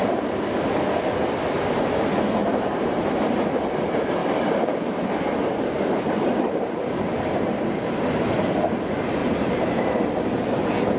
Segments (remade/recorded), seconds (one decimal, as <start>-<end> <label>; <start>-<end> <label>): 0.0-2.4 recorded; 2.4-3.2 remade; 3.2-4.2 recorded; 4.2-7.6 remade; 7.6-9.2 recorded; 9.2-11.0 remade